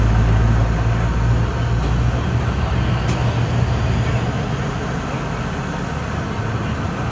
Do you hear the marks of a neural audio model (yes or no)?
no